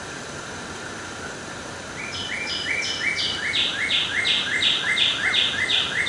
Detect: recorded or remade recorded